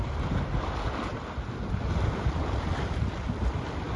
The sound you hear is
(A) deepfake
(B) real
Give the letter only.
B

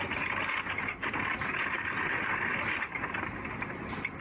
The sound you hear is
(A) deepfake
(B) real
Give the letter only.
B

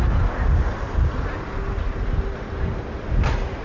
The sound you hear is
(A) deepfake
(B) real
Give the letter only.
B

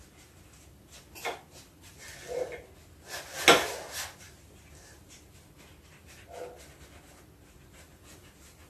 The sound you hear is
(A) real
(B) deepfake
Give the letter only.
A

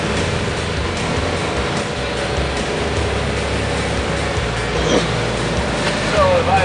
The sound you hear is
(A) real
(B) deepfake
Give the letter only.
A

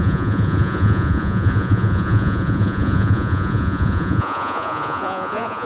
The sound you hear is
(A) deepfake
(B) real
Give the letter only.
A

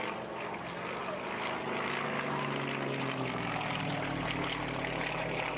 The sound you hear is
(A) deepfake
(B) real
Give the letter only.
B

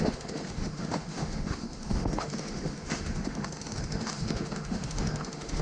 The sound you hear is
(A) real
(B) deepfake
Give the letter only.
B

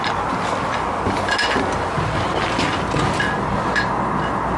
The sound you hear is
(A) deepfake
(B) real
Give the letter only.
B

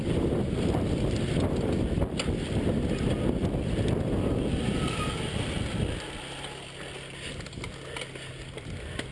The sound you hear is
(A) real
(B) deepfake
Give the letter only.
A